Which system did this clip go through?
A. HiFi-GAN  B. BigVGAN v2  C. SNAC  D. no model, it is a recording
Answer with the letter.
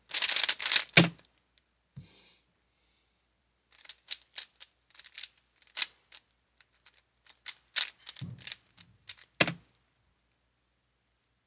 D